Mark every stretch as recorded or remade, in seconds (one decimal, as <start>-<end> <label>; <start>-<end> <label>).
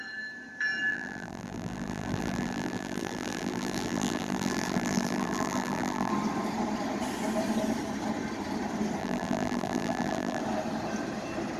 0.0-0.9 recorded; 0.9-6.1 remade; 6.1-9.0 recorded; 9.0-10.4 remade; 10.4-11.6 recorded